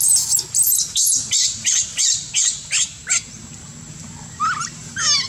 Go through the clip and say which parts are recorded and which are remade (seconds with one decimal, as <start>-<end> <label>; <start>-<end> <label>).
0.0-5.3 recorded